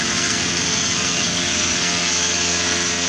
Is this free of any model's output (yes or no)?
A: no